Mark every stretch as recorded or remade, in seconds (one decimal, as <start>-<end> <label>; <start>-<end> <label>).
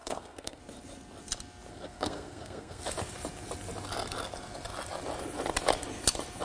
0.0-0.6 remade; 0.6-1.7 recorded; 1.7-2.8 remade; 2.8-6.4 recorded